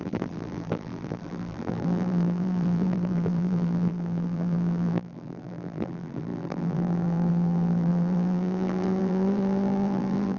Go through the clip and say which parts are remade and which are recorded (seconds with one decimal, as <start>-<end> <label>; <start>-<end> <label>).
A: 0.0-10.4 remade